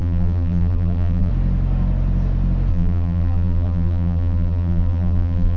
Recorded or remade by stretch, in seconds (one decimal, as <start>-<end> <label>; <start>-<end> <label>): 0.0-1.3 remade; 1.3-2.7 recorded; 2.7-5.6 remade